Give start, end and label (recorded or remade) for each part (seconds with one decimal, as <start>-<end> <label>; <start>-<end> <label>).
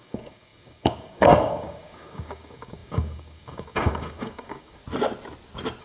0.0-4.8 remade; 4.8-5.8 recorded